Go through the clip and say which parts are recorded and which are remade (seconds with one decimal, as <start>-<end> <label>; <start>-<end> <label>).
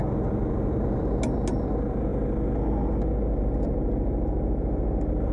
0.0-5.3 recorded